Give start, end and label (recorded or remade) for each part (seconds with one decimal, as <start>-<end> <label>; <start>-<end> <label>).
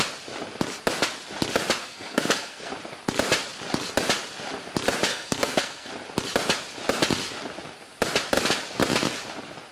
0.0-1.8 recorded; 1.8-2.7 remade; 2.7-5.1 recorded; 5.1-5.9 remade; 5.9-9.7 recorded